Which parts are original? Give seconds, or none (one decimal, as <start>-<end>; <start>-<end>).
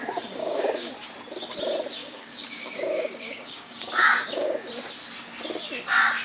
0.0-0.4; 0.9-2.0; 4.7-6.2